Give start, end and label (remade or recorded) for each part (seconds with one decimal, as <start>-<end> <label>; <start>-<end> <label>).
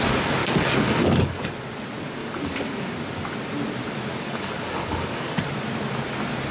0.0-0.4 recorded; 0.4-1.5 remade; 1.5-2.2 recorded; 2.2-2.8 remade; 2.8-4.1 recorded; 4.1-5.4 remade; 5.4-6.5 recorded